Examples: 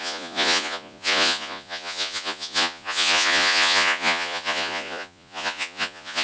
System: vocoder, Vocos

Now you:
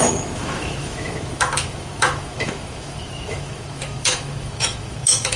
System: autoencoder, DAC-VAE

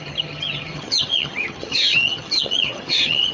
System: vocoder, HiFi-GAN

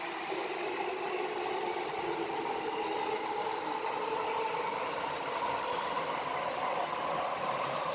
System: none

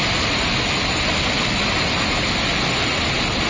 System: none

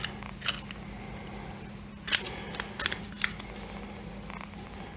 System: none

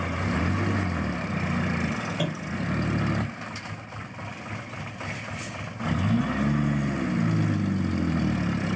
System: none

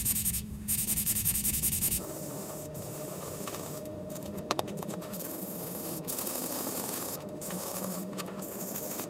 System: autoencoder, DAC-VAE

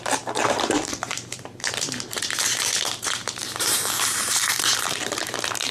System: vocoder, BigVGAN v2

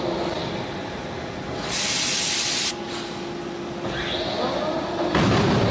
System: none